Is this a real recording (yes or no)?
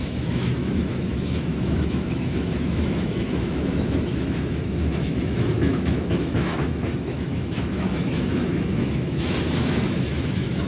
no